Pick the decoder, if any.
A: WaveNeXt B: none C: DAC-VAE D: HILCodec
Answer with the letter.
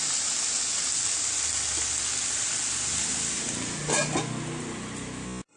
B